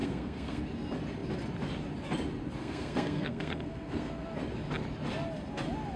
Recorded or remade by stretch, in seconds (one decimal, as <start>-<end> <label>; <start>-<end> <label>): 0.0-0.6 remade; 0.6-2.6 recorded; 2.6-4.1 remade; 4.1-6.0 recorded